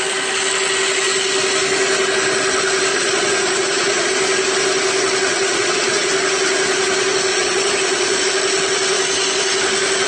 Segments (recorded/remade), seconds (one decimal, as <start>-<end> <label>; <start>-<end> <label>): 0.0-2.9 recorded; 2.9-4.1 remade; 4.1-5.3 recorded; 5.3-6.1 remade; 6.1-7.3 recorded; 7.3-8.2 remade; 8.2-10.1 recorded